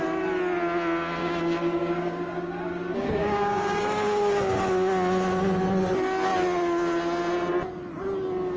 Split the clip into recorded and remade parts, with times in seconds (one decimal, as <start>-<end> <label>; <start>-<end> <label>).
0.0-1.2 recorded; 1.2-4.2 remade; 4.2-8.6 recorded